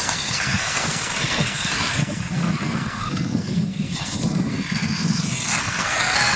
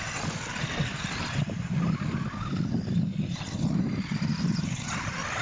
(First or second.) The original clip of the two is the second